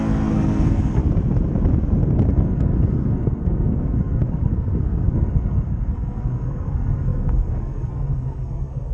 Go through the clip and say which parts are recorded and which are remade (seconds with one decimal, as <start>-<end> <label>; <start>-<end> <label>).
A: 0.0-1.0 remade; 1.0-2.3 recorded; 2.3-8.9 remade